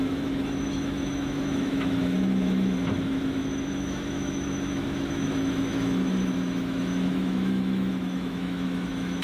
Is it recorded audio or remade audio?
remade